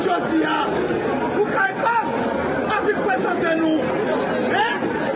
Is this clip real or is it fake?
real